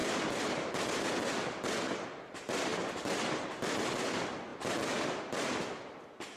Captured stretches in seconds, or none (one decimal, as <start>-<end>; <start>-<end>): 0.0-2.7; 3.8-6.4